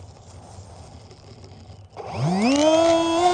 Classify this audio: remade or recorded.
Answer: recorded